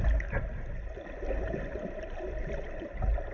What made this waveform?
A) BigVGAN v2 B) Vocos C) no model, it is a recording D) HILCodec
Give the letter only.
C